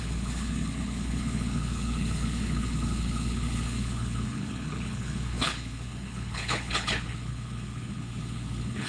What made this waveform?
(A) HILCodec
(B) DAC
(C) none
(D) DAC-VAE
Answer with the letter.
A